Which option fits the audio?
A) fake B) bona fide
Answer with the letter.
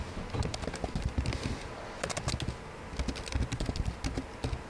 B